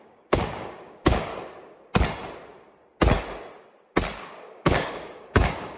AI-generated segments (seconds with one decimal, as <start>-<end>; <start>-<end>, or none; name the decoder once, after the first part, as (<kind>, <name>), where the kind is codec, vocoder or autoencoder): 0.0-1.3 (codec, DAC); 4.2-5.8